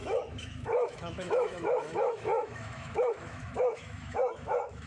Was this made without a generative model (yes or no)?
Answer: no